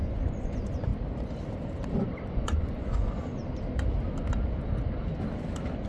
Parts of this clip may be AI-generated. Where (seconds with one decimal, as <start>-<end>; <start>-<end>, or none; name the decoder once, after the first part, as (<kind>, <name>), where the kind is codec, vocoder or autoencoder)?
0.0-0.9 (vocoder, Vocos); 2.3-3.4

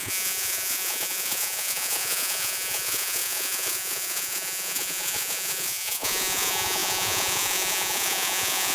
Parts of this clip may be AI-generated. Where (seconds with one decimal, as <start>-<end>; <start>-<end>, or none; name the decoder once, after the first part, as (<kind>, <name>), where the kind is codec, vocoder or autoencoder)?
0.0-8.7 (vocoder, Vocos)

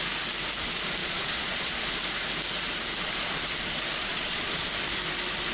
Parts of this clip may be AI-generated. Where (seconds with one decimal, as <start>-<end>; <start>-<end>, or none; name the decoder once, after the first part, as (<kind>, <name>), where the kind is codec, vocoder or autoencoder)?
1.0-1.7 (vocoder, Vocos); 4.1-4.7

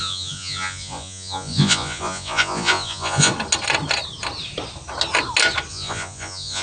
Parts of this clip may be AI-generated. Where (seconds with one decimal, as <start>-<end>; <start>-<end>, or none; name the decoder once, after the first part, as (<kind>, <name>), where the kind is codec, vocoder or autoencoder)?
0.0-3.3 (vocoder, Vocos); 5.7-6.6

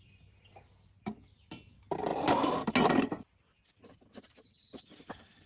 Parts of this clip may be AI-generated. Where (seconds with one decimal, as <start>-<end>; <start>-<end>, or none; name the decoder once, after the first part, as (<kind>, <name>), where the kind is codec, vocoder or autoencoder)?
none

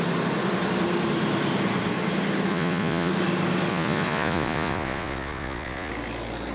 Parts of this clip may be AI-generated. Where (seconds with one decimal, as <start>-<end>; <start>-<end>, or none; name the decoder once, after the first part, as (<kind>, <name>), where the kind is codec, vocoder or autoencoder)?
2.5-3.1 (vocoder, Vocos); 3.7-5.9

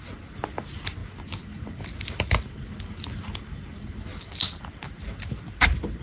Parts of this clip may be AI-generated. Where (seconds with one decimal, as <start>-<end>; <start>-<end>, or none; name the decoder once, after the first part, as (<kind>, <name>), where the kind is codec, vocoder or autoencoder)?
none